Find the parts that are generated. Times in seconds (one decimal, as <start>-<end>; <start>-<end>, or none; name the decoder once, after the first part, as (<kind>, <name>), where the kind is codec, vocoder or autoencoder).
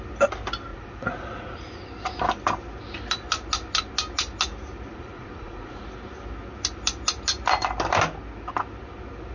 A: 0.7-1.8 (vocoder, Vocos); 4.9-5.8